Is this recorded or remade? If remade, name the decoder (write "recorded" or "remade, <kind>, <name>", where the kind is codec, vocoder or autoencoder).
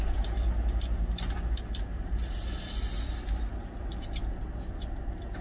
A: recorded